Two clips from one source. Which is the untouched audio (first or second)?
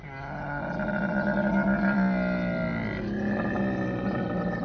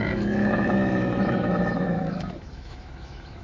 first